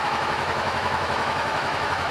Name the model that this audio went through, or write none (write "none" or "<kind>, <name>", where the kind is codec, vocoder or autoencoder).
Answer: autoencoder, DAC-VAE